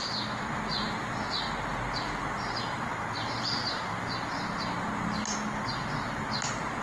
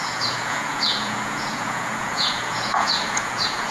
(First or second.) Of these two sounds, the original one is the first